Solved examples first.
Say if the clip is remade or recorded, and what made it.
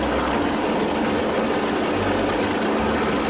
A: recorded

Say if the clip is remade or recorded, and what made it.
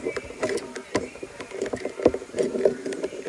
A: remade, vocoder, BigVGAN v2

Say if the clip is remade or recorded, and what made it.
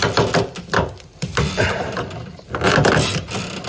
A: recorded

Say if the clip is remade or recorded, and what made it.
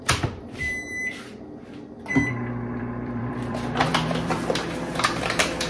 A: remade, vocoder, BigVGAN v2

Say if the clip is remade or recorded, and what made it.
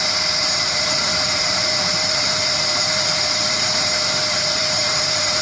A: remade, vocoder, BigVGAN v2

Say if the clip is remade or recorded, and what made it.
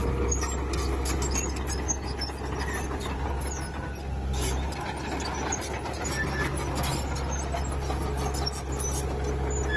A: recorded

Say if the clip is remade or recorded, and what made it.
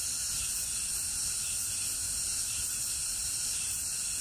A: recorded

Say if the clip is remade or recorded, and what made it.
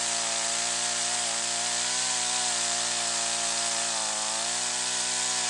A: recorded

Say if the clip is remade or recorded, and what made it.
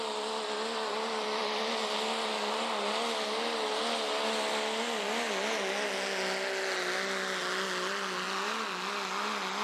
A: recorded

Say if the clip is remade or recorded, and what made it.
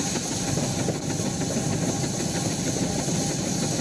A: recorded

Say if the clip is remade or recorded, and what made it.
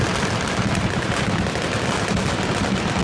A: recorded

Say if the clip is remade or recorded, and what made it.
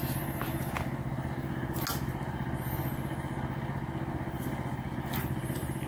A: recorded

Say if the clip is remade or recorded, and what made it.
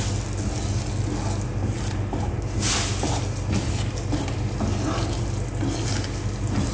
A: recorded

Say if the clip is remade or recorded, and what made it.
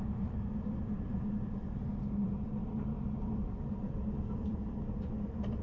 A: remade, vocoder, BigVGAN v2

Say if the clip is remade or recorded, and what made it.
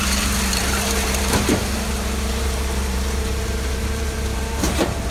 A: remade, vocoder, BigVGAN v2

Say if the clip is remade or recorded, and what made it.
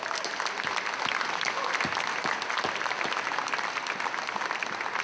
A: recorded